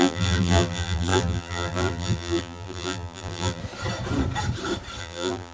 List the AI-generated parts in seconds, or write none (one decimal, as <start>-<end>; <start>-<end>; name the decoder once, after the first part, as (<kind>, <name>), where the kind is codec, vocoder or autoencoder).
0.0-3.6 (vocoder, BigVGAN v2); 5.0-5.5